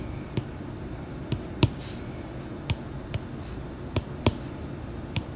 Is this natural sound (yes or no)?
yes